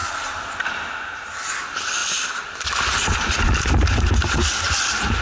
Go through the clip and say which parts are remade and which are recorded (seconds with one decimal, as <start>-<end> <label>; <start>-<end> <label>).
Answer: 0.0-5.2 recorded